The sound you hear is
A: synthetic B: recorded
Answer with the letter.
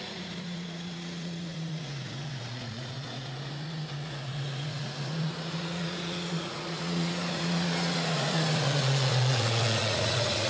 A